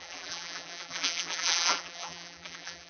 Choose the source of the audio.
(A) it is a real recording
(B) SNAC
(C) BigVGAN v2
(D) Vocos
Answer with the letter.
C